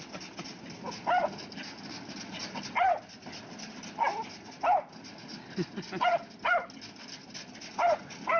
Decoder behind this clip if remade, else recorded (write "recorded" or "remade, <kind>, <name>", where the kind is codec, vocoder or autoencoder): recorded